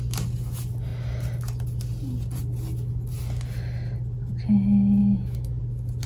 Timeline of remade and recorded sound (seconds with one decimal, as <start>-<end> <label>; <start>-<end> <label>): 0.0-5.0 recorded; 5.0-5.6 remade; 5.6-6.1 recorded